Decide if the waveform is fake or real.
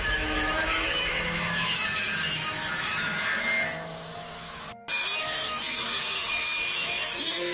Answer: fake